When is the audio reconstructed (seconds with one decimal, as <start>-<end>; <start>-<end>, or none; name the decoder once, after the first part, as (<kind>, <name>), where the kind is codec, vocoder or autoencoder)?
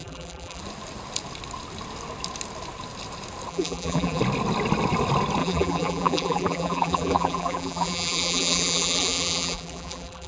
0.0-0.6 (vocoder, BigVGAN v2); 3.5-4.2; 5.4-10.3